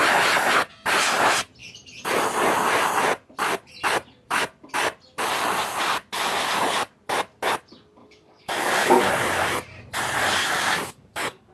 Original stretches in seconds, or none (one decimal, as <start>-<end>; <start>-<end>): 0.0-8.0; 9.0-10.4